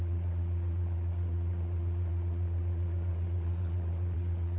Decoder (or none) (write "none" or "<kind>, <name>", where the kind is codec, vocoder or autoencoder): vocoder, WaveNeXt